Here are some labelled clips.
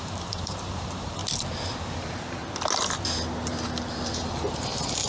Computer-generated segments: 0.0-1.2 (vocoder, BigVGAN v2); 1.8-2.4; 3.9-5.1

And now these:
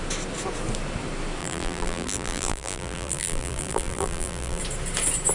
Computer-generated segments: 1.4-4.6 (vocoder, BigVGAN v2)

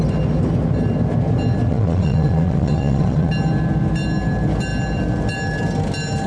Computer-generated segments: 1.7-3.3 (vocoder, Vocos)

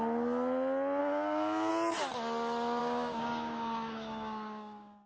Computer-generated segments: 1.0-1.7 (codec, DAC); 2.8-5.1

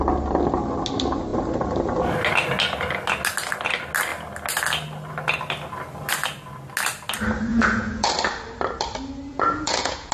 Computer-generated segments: 7.5-8.1 (vocoder, Vocos); 9.3-10.1

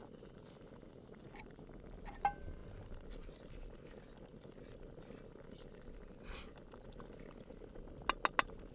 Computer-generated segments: none

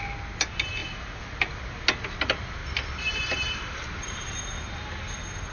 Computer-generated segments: 0.8-1.5 (vocoder, BigVGAN v2); 2.6-4.4

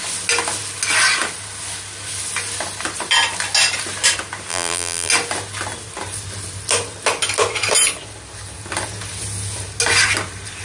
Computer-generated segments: 4.5-5.1 (vocoder, BigVGAN v2)